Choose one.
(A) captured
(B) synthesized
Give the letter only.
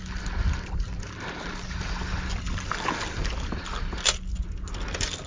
A